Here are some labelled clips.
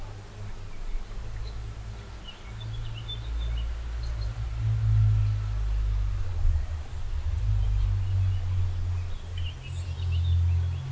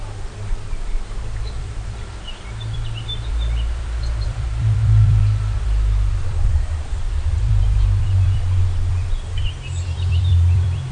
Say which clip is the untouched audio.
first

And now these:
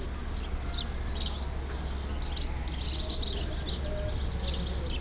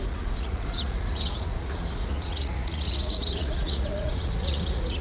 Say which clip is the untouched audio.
first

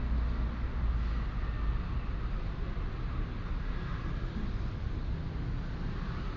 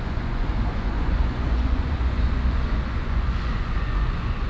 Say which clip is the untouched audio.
first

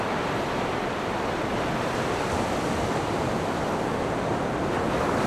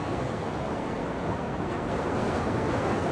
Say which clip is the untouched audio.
first